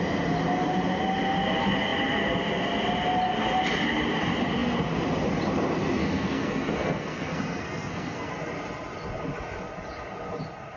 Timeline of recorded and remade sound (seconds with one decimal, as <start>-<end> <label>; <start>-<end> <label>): 0.0-6.0 recorded; 6.0-8.3 remade; 8.3-10.8 recorded